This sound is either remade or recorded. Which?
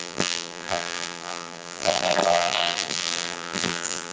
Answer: remade